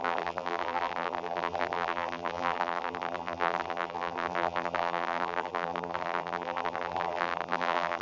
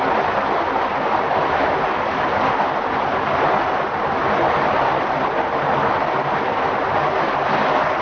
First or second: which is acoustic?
second